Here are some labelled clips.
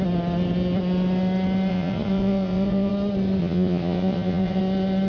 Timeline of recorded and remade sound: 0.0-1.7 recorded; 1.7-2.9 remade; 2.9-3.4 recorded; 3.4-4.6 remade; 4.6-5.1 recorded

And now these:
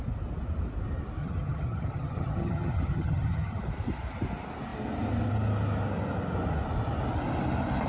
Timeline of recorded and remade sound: 0.0-1.2 recorded; 1.2-3.6 remade; 3.6-7.9 recorded

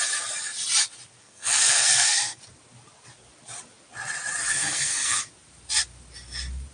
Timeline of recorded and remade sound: 0.0-1.2 recorded; 1.2-2.4 remade; 2.4-4.5 recorded; 4.5-5.3 remade; 5.3-6.7 recorded

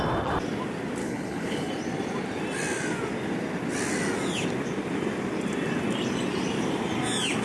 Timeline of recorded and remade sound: 0.0-1.0 recorded; 1.0-1.7 remade; 1.7-7.4 recorded

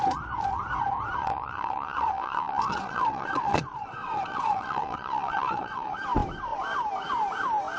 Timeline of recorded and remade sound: 0.0-1.2 recorded; 1.2-5.9 remade; 5.9-7.8 recorded

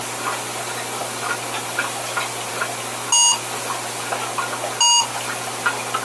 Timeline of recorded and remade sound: 0.0-6.0 recorded

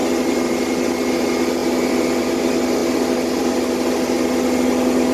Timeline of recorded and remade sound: 0.0-5.1 recorded